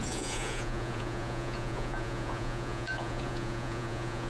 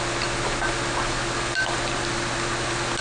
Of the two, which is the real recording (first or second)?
second